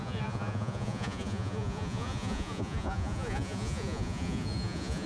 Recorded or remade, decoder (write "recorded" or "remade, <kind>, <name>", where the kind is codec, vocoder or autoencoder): remade, vocoder, Vocos